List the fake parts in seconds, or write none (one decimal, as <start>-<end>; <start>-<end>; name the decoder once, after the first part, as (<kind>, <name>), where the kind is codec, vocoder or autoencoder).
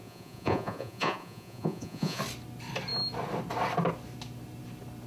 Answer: 0.0-2.2 (vocoder, Vocos)